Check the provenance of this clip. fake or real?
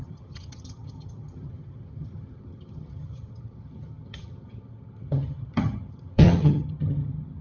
fake